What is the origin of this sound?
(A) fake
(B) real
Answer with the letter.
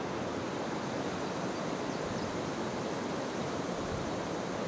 B